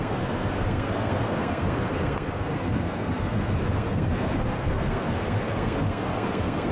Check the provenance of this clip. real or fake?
fake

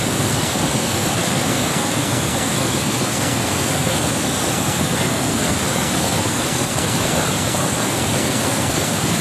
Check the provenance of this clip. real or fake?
fake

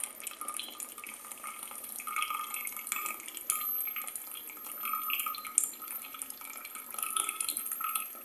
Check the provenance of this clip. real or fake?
real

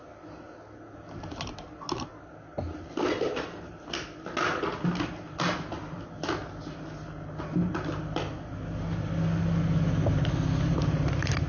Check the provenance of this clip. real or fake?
real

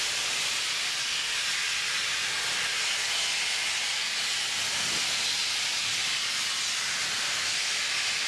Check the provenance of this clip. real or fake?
real